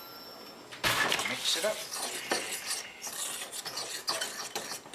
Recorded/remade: recorded